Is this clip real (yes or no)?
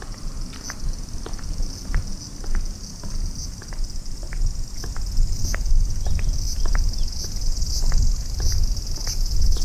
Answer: yes